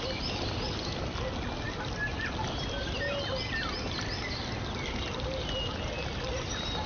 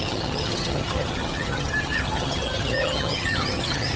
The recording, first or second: first